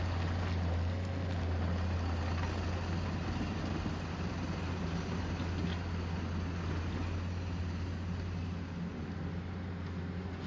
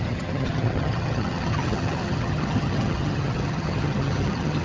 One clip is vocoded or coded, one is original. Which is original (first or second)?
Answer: first